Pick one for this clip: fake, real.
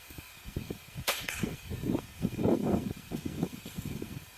fake